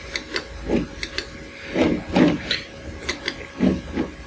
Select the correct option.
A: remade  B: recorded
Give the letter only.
B